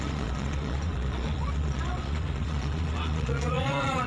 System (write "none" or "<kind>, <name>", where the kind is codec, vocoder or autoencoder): vocoder, Vocos